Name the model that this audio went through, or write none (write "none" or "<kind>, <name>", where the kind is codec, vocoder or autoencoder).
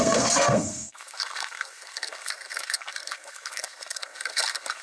codec, SNAC